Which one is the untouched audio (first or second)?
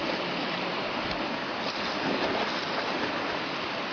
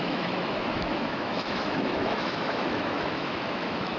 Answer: first